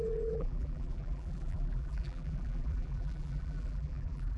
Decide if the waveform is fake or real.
fake